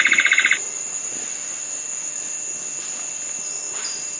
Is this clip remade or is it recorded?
recorded